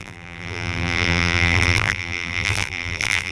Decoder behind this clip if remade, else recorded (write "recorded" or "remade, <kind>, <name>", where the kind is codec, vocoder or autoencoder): remade, vocoder, BigVGAN v2